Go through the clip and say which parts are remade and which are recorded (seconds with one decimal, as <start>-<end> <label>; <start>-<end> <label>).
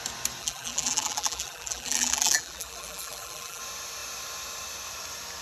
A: 0.0-0.4 recorded; 0.4-3.6 remade; 3.6-5.4 recorded